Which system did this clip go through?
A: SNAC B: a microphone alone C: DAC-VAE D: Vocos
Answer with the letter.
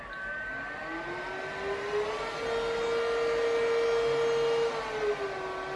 B